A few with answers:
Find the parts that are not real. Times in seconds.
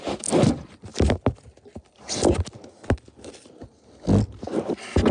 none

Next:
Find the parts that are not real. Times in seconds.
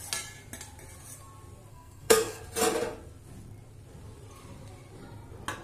1.7-2.4 (codec, SNAC)